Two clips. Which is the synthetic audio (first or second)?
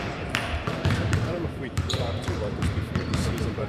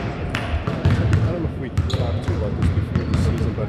first